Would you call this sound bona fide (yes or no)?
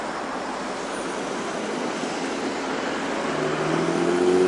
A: yes